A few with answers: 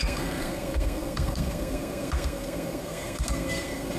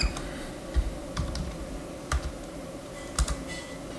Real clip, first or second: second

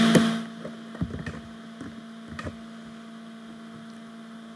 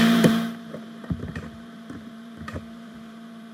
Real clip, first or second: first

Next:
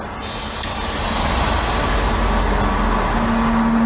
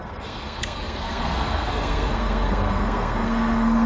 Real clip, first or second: first